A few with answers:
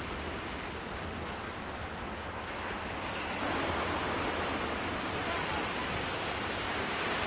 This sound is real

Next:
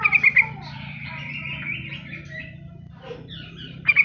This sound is real